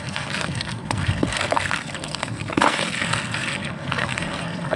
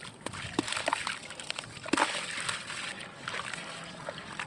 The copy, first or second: first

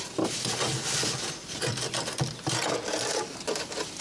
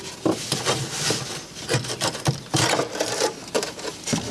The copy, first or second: second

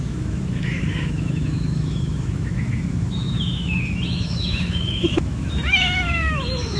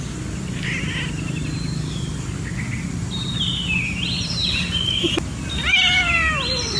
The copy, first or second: first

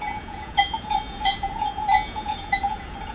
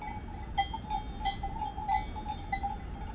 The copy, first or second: first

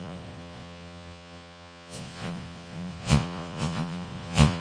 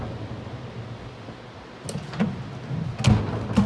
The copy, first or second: first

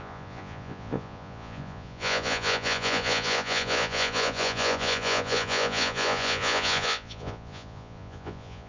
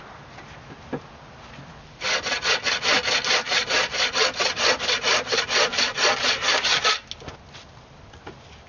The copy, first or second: first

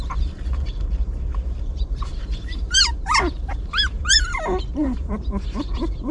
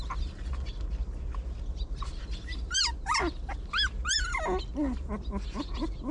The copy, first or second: first